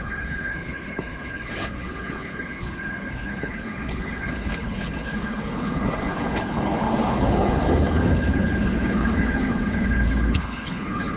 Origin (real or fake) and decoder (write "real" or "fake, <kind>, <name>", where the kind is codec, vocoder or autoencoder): fake, codec, HILCodec